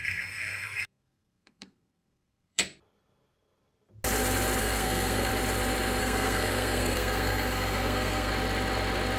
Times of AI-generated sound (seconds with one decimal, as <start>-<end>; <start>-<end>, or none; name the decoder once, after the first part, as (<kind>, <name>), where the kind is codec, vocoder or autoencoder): 0.0-2.6 (codec, SNAC); 4.6-5.3; 6.0-8.3